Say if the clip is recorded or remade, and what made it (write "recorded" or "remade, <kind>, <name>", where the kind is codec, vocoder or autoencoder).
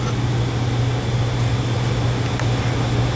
recorded